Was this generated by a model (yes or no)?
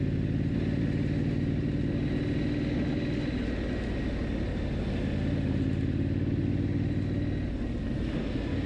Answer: no